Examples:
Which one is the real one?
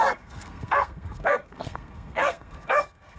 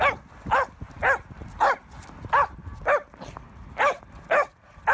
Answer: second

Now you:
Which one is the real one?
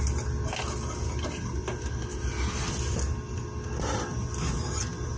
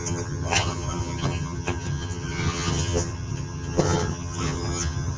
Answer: first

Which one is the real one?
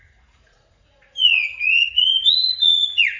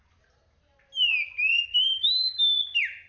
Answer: second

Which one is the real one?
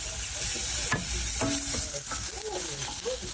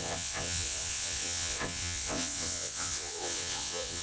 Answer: first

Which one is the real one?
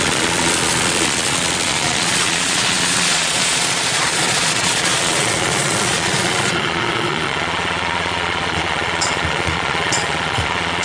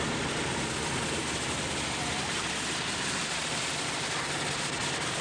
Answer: second